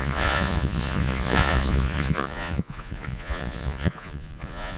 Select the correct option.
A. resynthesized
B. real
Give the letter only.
A